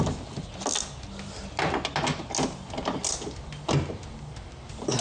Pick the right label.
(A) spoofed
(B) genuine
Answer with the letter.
B